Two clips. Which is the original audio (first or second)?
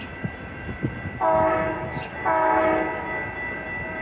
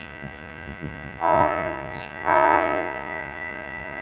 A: first